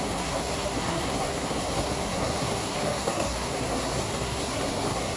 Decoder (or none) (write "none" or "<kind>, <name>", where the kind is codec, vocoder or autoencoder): codec, SNAC